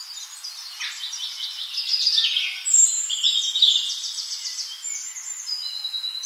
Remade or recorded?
recorded